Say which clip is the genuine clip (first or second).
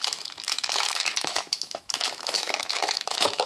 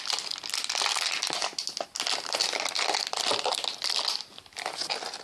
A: second